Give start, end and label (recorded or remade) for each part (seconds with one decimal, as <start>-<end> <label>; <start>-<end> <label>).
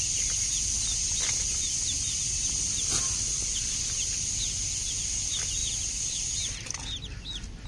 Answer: 0.0-7.7 recorded